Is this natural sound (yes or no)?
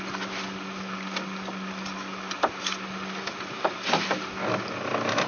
yes